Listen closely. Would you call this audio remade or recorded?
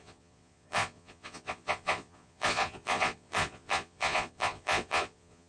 remade